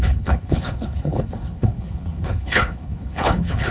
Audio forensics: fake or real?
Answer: fake